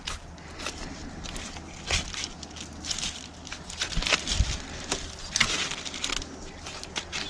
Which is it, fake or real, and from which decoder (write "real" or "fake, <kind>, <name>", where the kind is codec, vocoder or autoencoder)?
real